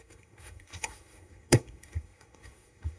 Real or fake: fake